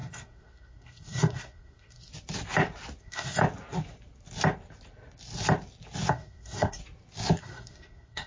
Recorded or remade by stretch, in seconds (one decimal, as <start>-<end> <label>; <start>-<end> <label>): 0.0-2.1 remade; 2.1-3.0 recorded; 3.0-3.4 remade; 3.4-6.1 recorded; 6.1-6.8 remade; 6.8-7.4 recorded; 7.4-8.3 remade